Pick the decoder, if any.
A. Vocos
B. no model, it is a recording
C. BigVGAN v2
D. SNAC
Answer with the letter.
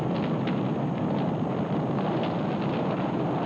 B